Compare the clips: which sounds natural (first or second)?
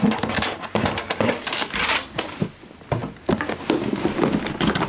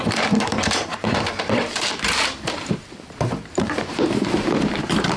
first